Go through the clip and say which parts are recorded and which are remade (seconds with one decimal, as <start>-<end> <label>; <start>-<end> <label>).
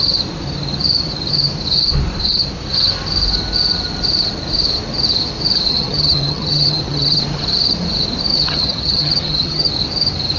0.0-5.7 recorded; 5.7-7.2 remade; 7.2-8.3 recorded; 8.3-9.7 remade; 9.7-10.4 recorded